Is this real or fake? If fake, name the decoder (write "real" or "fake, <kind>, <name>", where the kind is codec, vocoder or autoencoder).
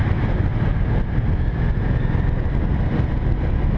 real